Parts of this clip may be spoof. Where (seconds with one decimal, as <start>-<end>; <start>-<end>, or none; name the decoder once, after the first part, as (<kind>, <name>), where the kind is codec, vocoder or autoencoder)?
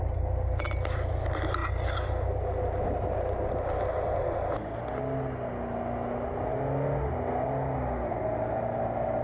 none